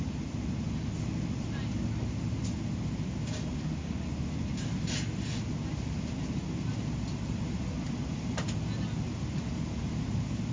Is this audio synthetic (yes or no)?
no